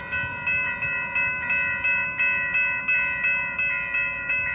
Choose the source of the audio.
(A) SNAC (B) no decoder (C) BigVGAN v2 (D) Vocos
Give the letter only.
B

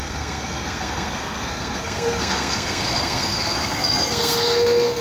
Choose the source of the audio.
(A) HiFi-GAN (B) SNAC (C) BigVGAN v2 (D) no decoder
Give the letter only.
B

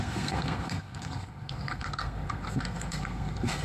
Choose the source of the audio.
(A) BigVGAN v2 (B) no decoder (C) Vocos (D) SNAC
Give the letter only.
D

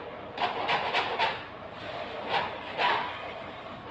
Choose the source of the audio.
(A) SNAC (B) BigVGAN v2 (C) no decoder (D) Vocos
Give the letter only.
C